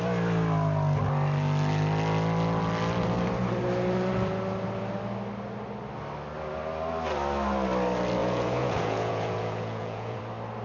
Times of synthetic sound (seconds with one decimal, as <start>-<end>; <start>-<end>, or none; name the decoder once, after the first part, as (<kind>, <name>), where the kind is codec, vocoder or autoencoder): 8.2-10.2 (vocoder, Vocos)